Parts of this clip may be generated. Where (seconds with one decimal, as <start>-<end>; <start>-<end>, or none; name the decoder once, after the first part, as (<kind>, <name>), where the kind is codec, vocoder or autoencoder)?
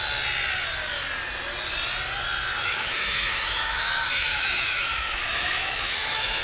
2.6-6.4 (autoencoder, DAC-VAE)